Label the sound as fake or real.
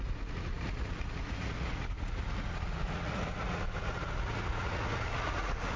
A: fake